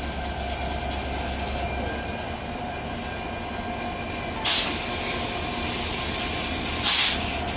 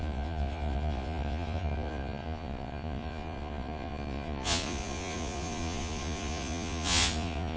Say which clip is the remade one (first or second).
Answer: second